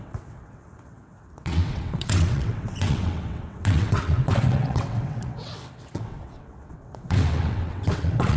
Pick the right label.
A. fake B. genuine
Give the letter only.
A